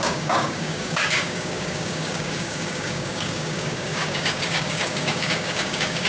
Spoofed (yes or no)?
yes